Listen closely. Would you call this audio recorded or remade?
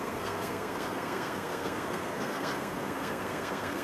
remade